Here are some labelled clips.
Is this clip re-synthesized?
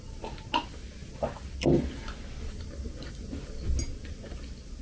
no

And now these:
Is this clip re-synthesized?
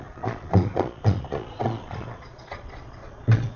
yes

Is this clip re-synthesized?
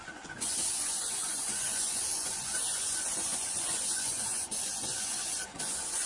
yes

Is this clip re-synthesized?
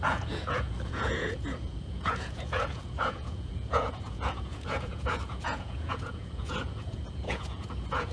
yes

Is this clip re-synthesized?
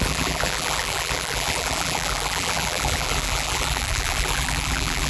yes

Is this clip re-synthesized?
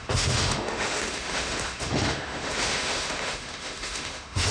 yes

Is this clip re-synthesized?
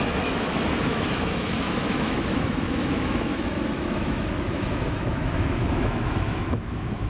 yes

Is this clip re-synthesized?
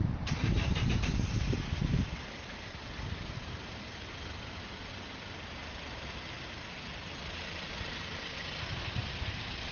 yes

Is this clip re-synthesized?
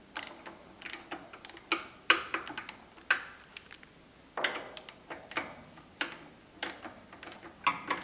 no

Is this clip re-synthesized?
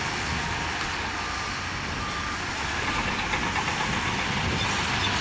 no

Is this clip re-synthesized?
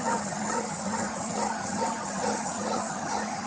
yes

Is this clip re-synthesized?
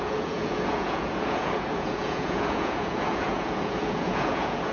yes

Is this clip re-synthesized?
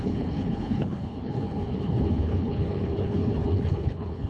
yes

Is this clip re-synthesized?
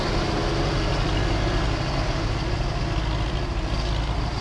no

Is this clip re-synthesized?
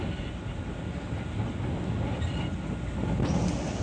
no